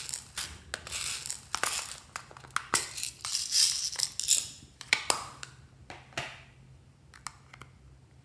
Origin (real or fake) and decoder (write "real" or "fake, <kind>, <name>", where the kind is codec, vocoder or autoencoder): real